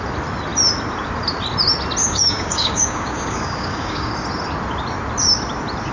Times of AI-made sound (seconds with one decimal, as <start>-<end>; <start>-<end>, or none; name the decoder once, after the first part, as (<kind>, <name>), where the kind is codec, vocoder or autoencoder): 2.0-4.1 (codec, DAC)